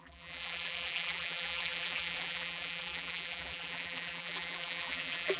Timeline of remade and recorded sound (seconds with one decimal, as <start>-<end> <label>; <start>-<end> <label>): 0.0-5.4 remade